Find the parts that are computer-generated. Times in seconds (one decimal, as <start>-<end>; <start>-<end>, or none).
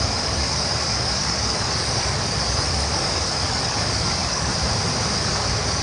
0.0-4.5; 5.3-5.8